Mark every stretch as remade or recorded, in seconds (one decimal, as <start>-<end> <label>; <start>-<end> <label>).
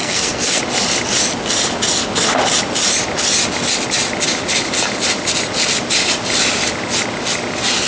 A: 0.0-0.6 remade; 0.6-7.9 recorded